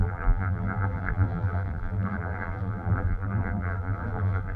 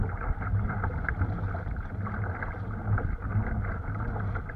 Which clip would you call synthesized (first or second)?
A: first